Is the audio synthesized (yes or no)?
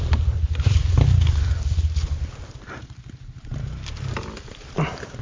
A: no